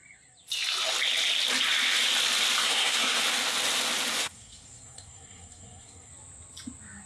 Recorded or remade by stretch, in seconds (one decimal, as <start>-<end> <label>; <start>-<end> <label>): 0.0-2.6 recorded; 2.6-3.2 remade; 3.2-4.1 recorded; 4.1-6.1 remade; 6.1-7.1 recorded